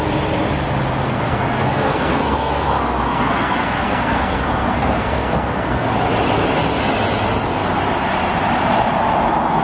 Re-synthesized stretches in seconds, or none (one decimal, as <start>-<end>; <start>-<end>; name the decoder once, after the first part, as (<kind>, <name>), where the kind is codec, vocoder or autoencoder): 1.0-5.9 (codec, SNAC)